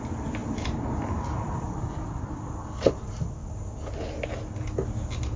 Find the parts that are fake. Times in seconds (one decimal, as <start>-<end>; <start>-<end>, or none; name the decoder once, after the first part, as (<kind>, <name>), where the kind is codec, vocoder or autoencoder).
0.4-2.9 (vocoder, BigVGAN v2)